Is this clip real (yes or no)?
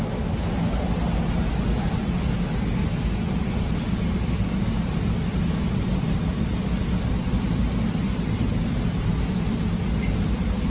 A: yes